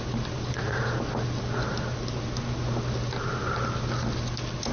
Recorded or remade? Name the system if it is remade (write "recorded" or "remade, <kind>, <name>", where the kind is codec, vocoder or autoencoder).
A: recorded